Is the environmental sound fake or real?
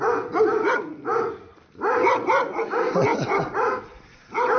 real